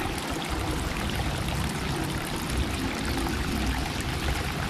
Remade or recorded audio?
recorded